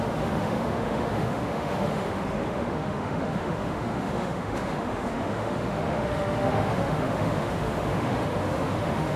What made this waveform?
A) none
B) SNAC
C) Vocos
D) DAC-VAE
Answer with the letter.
D